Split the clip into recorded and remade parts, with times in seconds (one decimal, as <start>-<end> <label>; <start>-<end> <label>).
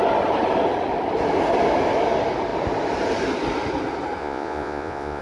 0.0-4.2 recorded; 4.2-5.2 remade